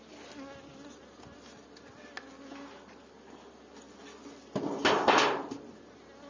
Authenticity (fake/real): real